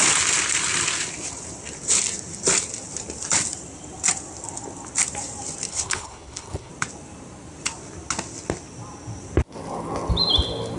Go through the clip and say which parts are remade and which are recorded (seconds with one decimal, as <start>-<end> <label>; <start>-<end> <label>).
0.0-5.7 recorded; 5.7-6.7 remade; 6.7-10.8 recorded